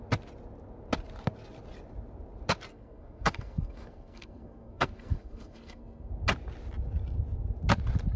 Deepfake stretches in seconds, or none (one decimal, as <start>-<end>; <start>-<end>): 2.7-6.1